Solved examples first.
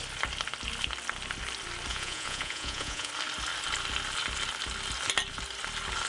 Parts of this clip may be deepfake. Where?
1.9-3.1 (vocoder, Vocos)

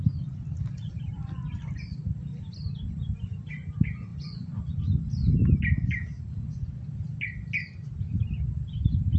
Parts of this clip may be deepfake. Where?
4.1-4.8 (vocoder, Vocos)

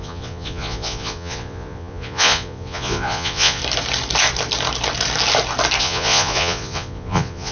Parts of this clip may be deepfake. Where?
0.0-3.6 (vocoder, Vocos); 5.8-7.5

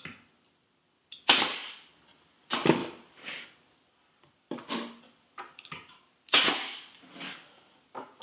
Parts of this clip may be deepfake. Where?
none

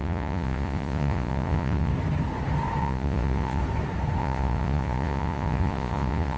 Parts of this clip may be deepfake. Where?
0.0-1.9 (vocoder, Vocos); 2.8-3.6; 4.2-6.4

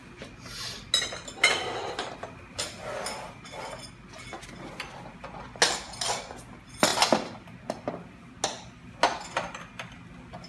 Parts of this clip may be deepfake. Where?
none